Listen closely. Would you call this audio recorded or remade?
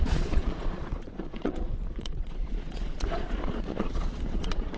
remade